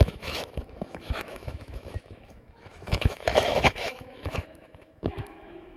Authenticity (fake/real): fake